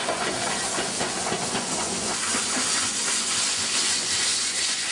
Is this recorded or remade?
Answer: remade